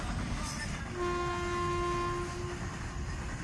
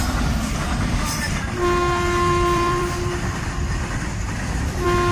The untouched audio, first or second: first